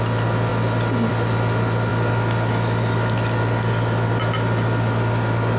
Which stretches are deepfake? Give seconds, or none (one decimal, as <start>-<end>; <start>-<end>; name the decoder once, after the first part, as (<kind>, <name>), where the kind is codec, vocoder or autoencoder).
none